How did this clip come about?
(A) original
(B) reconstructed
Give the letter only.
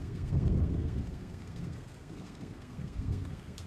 B